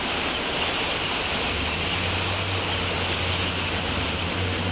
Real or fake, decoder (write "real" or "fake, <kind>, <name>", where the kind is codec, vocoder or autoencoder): real